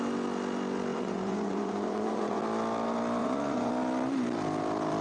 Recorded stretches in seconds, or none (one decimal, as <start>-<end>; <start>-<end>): 0.0-0.9; 2.4-3.2; 3.7-5.0